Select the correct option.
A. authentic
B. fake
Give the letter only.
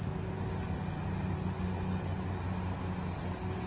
A